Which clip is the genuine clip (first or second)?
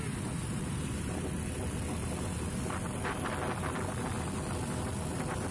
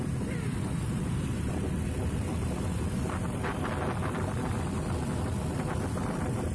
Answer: first